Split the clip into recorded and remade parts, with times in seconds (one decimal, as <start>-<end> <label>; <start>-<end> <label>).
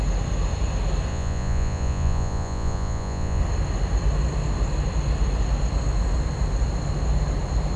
0.0-1.1 recorded; 1.1-3.4 remade; 3.4-7.8 recorded